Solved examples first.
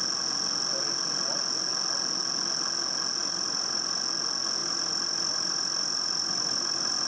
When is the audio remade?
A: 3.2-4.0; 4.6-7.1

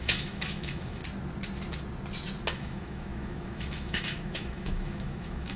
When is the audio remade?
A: 0.0-1.0; 2.5-5.6

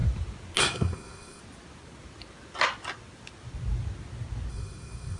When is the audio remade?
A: 0.6-1.4; 4.5-5.2

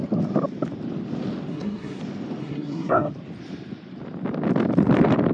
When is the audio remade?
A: 1.5-2.0; 2.4-3.1

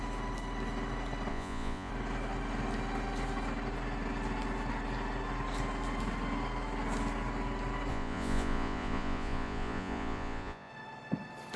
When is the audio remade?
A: 1.3-1.9; 7.9-10.7